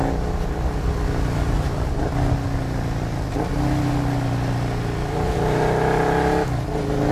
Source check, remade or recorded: recorded